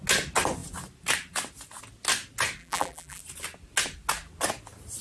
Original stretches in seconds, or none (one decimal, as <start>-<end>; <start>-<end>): 0.0-2.6; 3.2-5.0